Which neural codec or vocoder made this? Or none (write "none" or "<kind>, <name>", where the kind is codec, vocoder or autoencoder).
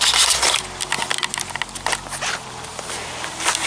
none